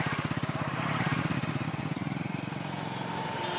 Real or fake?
fake